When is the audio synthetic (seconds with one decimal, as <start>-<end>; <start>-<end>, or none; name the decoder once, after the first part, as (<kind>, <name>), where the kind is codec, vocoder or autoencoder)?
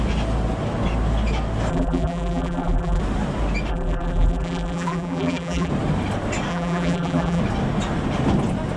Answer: 1.7-3.0 (vocoder, BigVGAN v2); 3.7-5.7; 6.5-7.4